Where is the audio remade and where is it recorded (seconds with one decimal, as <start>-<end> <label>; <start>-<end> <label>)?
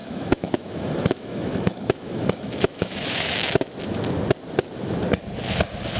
0.0-3.6 remade; 3.6-6.0 recorded